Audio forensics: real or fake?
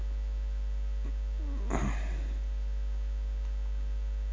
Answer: real